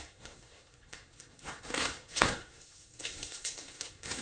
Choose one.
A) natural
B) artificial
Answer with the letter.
B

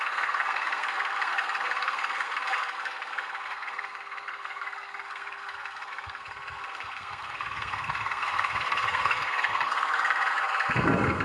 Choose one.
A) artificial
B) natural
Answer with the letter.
A